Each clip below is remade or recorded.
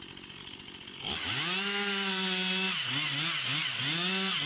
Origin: recorded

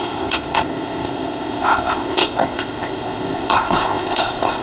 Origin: remade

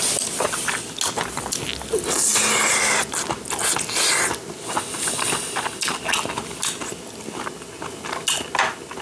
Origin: recorded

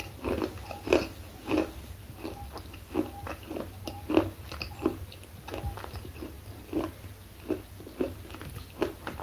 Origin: recorded